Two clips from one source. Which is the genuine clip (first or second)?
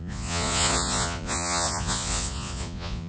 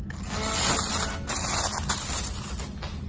second